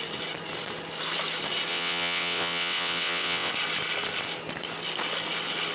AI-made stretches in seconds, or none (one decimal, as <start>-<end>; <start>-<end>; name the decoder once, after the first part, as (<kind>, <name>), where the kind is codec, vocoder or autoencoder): 1.7-3.5 (vocoder, WaveNeXt)